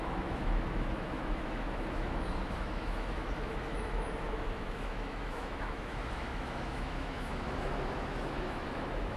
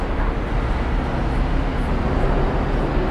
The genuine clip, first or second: second